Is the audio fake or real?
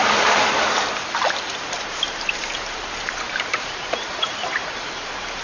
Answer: fake